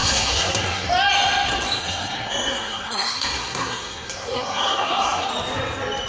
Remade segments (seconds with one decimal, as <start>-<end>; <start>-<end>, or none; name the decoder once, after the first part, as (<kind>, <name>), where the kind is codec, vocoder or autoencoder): 0.0-0.9 (codec, SNAC); 1.8-5.3